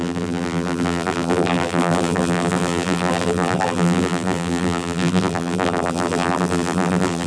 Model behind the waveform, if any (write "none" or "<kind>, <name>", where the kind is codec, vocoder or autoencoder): vocoder, BigVGAN v2